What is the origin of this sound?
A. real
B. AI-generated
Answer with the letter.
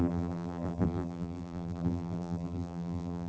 B